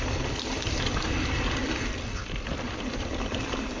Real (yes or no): yes